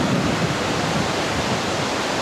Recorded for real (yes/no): no